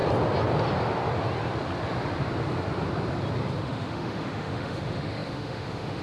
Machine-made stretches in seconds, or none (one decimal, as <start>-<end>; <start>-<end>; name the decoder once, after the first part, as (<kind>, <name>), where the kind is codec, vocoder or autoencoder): 3.6-6.0 (autoencoder, DAC-VAE)

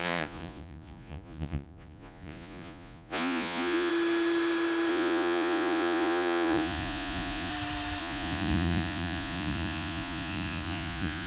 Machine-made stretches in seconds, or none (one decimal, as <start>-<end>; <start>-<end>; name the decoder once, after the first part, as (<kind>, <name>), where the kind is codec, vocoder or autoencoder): 0.0-3.9 (vocoder, Vocos); 4.9-7.5; 8.0-11.3

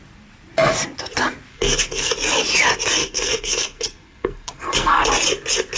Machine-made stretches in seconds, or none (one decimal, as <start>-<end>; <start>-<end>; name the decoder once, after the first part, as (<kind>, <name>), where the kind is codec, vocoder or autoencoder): 1.5-2.1 (codec, SNAC); 3.0-5.1

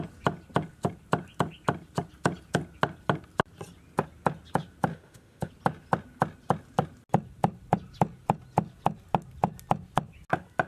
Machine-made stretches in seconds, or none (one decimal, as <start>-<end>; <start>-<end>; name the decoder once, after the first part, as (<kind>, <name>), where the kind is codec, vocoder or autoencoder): 4.9-5.5 (autoencoder, DAC-VAE)